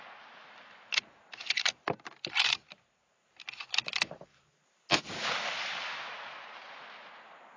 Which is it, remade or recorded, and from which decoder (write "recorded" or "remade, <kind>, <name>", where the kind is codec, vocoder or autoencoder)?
recorded